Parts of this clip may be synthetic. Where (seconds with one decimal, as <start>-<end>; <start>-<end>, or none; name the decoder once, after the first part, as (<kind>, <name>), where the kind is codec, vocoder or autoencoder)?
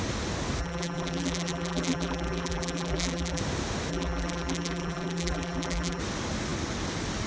0.6-3.4 (vocoder, BigVGAN v2); 3.9-6.0